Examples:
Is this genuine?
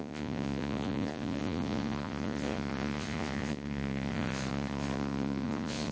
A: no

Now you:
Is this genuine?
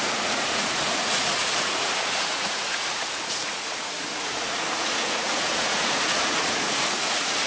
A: no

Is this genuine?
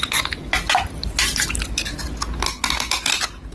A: yes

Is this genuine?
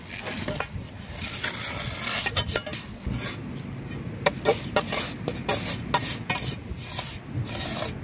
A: yes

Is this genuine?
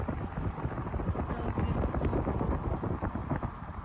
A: yes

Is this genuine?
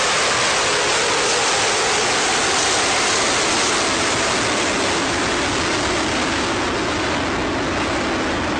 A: yes